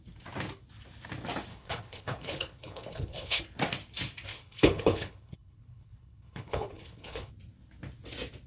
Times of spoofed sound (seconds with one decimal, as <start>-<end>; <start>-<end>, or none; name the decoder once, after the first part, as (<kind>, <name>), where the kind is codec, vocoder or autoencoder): 1.5-3.4 (codec, HILCodec); 4.3-7.3

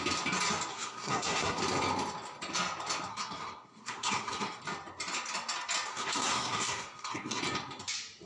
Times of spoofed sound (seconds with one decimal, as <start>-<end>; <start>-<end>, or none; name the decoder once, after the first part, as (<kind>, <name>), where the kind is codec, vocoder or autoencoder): 0.7-1.6 (codec, SNAC); 3.1-4.6; 5.9-7.4